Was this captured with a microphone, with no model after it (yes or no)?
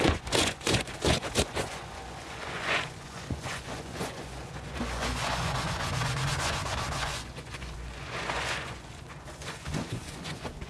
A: no